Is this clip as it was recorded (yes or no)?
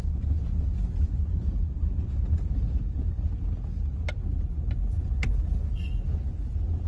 yes